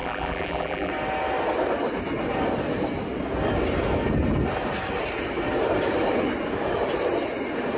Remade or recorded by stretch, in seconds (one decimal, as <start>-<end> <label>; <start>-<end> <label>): 0.0-0.9 remade; 0.9-7.8 recorded